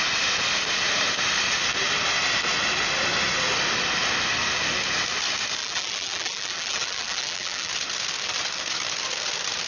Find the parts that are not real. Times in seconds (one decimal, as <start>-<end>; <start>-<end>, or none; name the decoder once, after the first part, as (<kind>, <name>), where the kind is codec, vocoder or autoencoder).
5.6-7.7 (vocoder, BigVGAN v2)